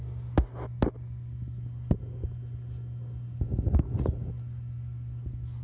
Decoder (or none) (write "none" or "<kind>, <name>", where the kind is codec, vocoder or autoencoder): none